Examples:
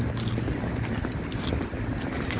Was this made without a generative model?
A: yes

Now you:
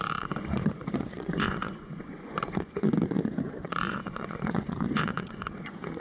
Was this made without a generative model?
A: no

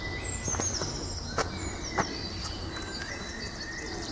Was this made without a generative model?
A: yes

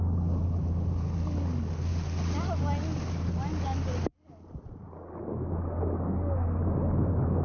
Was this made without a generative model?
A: yes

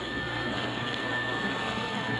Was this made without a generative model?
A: no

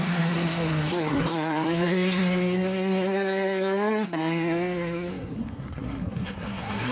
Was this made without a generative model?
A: no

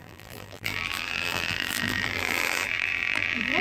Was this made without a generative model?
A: no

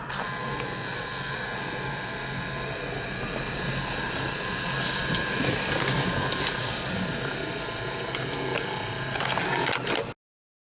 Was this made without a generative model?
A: yes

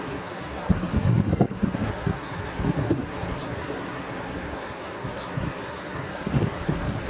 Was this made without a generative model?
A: no